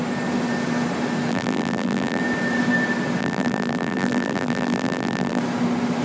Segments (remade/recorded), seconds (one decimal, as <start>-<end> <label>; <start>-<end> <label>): 0.0-1.3 recorded; 1.3-2.2 remade; 2.2-3.2 recorded; 3.2-5.4 remade; 5.4-6.0 recorded